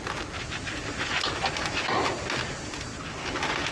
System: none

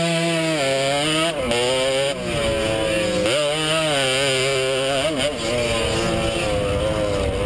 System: none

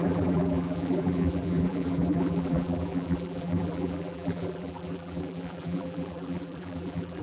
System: vocoder, BigVGAN v2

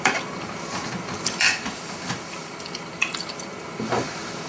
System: vocoder, BigVGAN v2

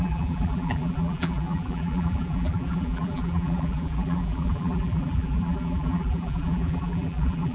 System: vocoder, BigVGAN v2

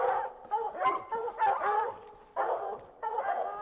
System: none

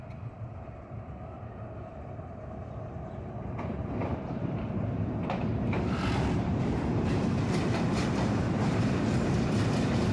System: vocoder, BigVGAN v2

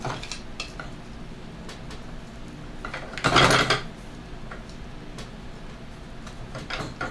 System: none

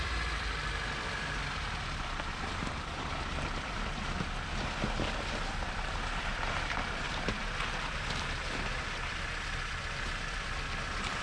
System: vocoder, BigVGAN v2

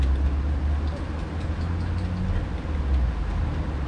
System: none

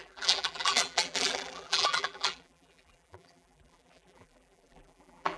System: vocoder, BigVGAN v2